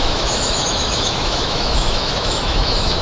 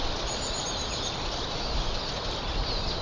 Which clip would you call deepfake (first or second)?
first